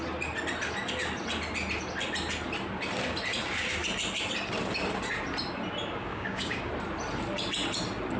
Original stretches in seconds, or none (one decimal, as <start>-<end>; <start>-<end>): 0.0-6.1; 6.7-8.2